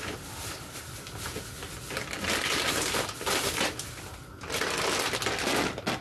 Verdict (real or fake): real